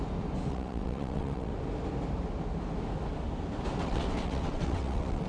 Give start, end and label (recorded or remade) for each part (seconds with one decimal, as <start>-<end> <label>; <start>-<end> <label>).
0.0-0.5 recorded; 0.5-1.5 remade; 1.5-3.8 recorded; 3.8-5.3 remade